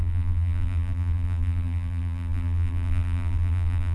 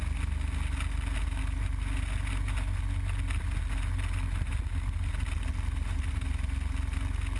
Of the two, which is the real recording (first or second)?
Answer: second